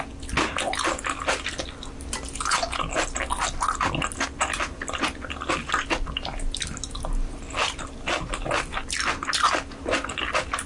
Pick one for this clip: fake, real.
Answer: real